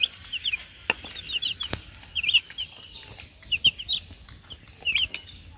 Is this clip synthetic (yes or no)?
no